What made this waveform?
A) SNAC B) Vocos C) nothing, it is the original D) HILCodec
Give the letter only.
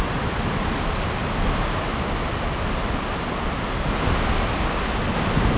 C